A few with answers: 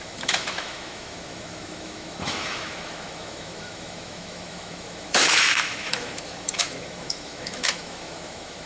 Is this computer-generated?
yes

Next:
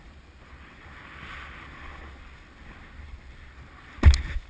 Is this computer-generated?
no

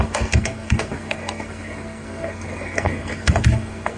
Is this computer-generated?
yes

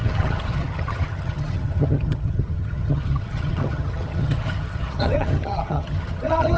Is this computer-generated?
yes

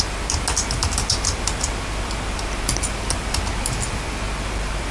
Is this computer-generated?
no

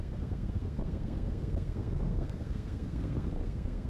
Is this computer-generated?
yes